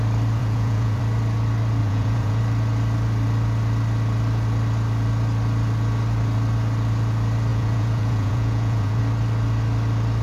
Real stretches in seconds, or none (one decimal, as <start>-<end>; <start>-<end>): 0.0-0.4; 1.0-1.8; 2.4-7.5; 9.0-10.2